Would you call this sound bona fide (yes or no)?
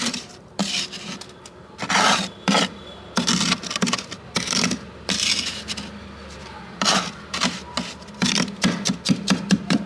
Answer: no